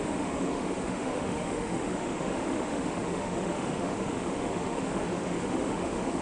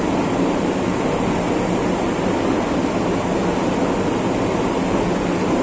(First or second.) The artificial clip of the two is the first